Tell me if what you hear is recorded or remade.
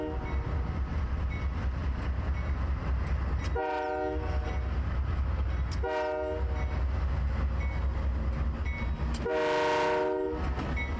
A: recorded